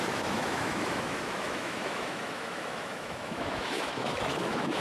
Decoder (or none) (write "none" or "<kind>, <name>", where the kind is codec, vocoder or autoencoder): autoencoder, DAC-VAE